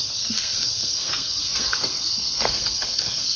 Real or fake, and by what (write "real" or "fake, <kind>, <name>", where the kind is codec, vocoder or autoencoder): fake, codec, SNAC